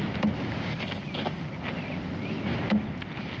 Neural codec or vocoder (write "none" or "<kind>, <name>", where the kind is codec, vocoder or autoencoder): none